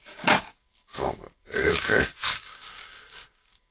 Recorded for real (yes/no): no